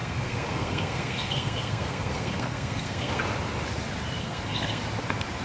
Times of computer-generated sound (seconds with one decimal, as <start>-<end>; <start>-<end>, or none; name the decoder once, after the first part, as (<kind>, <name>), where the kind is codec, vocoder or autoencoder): 0.0-3.2 (codec, SNAC); 4.2-4.8